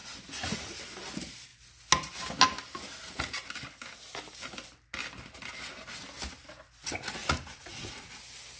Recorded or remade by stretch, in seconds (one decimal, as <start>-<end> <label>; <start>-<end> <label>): 0.0-0.8 remade; 0.8-7.2 recorded; 7.2-8.1 remade; 8.1-8.6 recorded